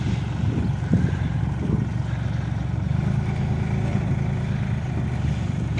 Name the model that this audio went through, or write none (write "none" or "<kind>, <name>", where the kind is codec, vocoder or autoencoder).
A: none